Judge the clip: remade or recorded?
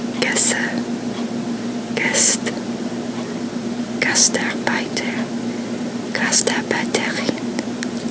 remade